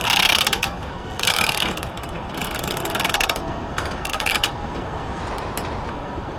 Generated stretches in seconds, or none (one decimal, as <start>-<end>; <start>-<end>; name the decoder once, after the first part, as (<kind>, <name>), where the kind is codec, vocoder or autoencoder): 0.0-5.2 (codec, SNAC); 5.9-6.4